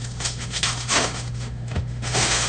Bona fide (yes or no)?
no